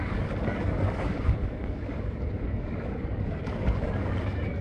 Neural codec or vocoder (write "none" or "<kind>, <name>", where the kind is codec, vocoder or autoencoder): codec, DAC